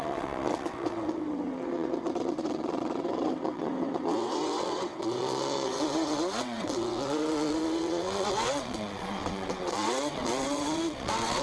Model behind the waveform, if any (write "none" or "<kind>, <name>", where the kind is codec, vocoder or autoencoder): vocoder, WaveNeXt